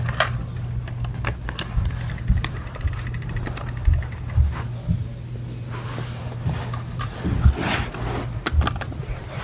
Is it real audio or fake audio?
real